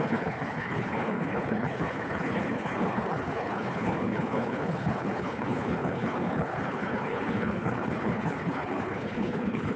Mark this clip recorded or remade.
remade